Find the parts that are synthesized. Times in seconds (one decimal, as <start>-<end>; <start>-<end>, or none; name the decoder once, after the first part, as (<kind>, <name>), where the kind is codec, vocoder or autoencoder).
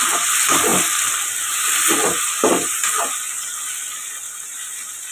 none